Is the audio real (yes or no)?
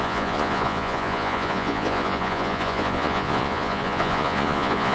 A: no